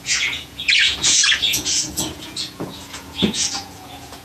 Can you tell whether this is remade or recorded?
remade